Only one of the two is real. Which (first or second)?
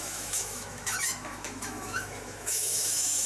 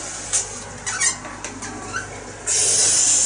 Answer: second